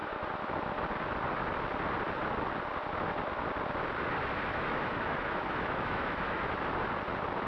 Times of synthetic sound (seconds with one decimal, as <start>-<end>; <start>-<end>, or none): 4.5-6.4